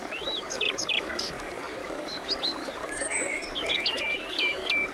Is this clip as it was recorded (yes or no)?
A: no